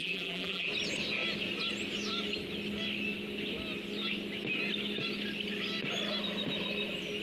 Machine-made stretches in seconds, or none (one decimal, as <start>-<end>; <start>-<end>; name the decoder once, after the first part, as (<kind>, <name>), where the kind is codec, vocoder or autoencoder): 0.0-0.7 (vocoder, BigVGAN v2)

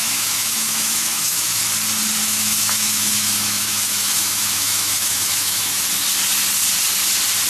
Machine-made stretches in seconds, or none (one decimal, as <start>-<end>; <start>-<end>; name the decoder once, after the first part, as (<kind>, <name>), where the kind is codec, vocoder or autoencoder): 0.0-1.6 (autoencoder, DAC-VAE); 2.2-5.8